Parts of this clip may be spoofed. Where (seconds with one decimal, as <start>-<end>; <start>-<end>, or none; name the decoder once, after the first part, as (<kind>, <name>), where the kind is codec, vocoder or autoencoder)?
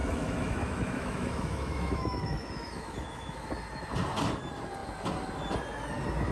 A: 0.0-3.5 (autoencoder, DAC-VAE)